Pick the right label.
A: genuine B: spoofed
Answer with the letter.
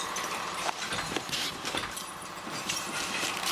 B